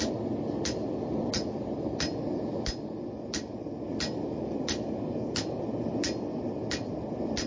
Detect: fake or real real